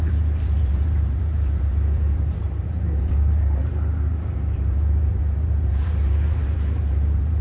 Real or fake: fake